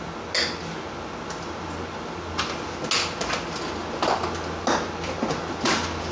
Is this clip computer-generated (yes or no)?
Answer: no